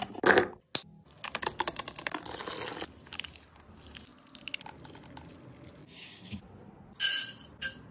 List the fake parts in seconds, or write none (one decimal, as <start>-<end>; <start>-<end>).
5.8-6.4